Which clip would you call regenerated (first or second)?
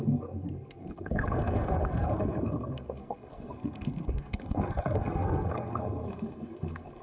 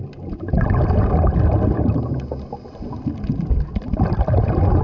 first